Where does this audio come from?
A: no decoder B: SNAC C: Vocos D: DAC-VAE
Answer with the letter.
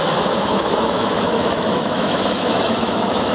D